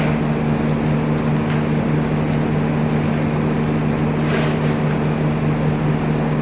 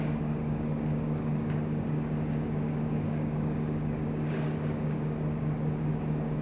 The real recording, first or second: first